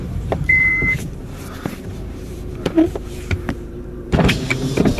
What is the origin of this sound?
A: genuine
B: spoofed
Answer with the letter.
B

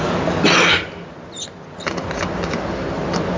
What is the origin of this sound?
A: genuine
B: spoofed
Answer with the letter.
A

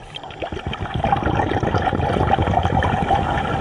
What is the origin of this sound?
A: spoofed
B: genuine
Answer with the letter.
B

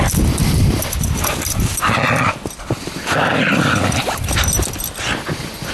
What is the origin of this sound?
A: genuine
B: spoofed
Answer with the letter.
B